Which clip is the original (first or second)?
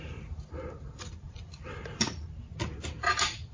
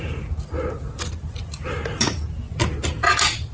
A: second